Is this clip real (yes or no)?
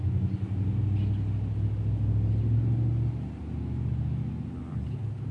yes